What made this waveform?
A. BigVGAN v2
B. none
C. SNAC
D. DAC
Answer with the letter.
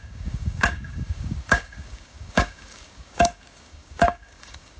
D